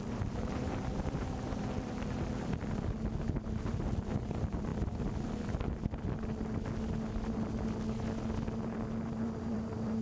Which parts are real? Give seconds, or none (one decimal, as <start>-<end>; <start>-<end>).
2.6-3.2; 4.7-9.0